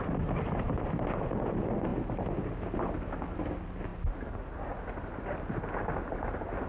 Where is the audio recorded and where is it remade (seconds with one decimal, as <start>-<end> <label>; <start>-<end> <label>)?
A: 0.0-6.7 recorded